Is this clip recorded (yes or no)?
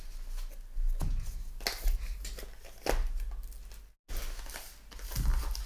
yes